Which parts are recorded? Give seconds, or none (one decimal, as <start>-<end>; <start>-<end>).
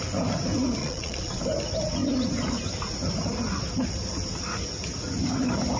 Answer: 0.0-0.8; 1.4-5.8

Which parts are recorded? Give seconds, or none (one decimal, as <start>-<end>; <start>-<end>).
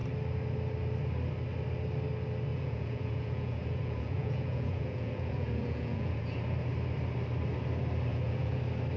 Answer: 0.0-2.5; 6.4-8.1; 8.6-9.0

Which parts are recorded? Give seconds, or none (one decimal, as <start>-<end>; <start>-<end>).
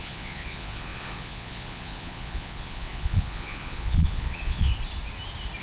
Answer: 4.7-5.6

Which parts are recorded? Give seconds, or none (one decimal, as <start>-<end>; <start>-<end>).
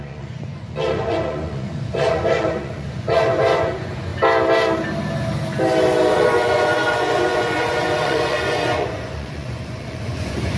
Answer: 4.1-6.1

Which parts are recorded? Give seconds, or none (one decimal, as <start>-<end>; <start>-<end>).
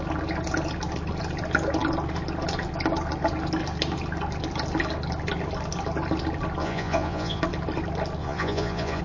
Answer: 0.0-6.6; 7.4-8.2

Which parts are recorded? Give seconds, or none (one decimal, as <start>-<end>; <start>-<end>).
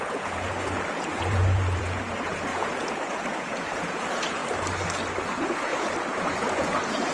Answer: 4.4-5.3; 5.7-6.2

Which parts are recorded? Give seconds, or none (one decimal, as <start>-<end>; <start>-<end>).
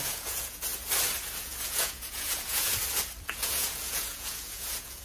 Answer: 0.7-1.4; 2.7-3.3